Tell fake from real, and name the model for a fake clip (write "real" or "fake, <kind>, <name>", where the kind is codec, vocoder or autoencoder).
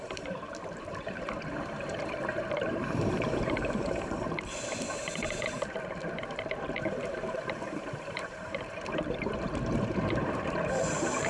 fake, vocoder, BigVGAN v2